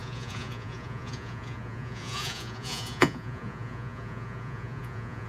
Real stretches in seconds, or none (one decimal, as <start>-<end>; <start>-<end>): none